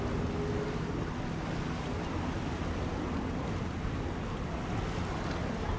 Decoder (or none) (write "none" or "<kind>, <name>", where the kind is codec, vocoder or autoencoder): none